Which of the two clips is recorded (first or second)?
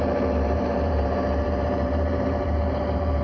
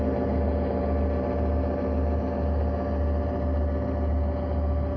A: second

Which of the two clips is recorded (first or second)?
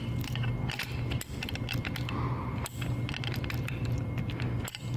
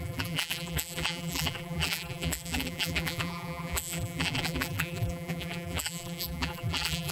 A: first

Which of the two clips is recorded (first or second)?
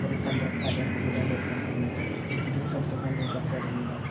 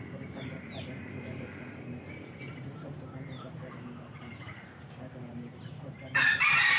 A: first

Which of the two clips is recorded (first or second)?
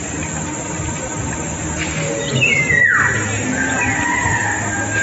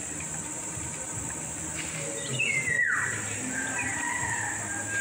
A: first